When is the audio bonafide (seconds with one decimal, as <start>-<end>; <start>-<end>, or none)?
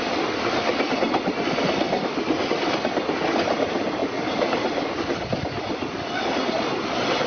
0.0-7.3